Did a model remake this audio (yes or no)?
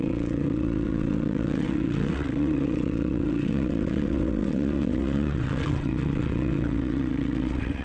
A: yes